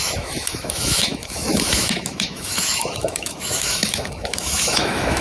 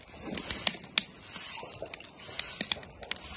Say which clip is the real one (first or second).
second